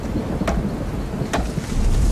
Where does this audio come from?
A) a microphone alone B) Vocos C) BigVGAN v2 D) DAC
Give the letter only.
A